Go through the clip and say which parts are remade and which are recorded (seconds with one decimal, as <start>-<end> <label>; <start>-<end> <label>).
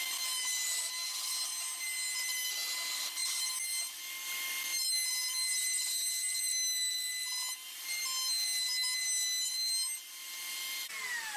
0.0-11.4 recorded